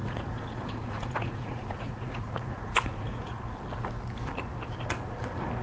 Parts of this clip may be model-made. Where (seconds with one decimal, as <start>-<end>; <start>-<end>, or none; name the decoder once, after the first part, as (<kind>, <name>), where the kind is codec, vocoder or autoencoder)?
0.0-3.4 (vocoder, Vocos)